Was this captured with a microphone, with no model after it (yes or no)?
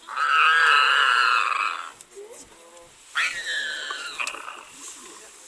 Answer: yes